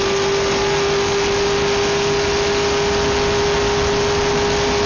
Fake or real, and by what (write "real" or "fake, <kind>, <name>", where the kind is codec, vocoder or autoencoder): real